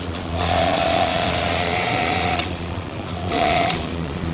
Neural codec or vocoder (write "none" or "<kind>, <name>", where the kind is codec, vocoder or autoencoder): vocoder, Vocos